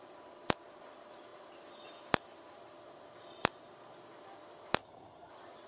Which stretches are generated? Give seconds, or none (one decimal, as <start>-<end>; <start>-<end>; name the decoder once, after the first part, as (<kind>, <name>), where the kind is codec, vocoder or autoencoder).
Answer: 4.8-5.3 (vocoder, HiFi-GAN)